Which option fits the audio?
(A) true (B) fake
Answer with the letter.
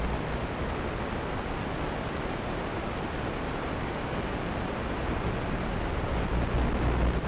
A